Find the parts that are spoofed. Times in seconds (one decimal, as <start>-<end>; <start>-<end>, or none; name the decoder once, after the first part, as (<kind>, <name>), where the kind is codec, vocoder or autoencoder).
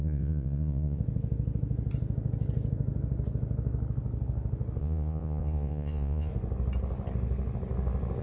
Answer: 0.0-1.0 (vocoder, Vocos); 4.8-6.3